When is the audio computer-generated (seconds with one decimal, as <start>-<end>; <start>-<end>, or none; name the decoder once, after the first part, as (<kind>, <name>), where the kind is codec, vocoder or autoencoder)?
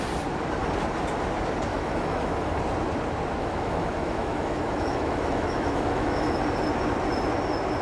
1.7-2.6 (autoencoder, DAC-VAE); 3.4-6.4